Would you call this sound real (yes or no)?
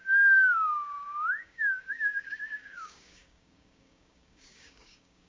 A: no